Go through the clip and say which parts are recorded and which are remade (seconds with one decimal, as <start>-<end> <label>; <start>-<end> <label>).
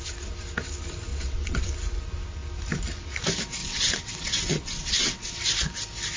0.0-1.1 recorded; 1.1-1.7 remade; 1.7-3.6 recorded; 3.6-5.3 remade; 5.3-6.2 recorded